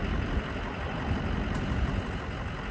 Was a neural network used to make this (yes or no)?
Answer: no